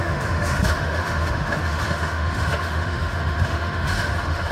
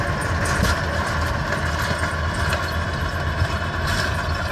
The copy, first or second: first